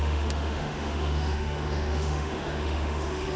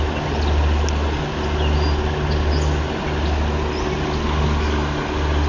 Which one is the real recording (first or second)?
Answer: second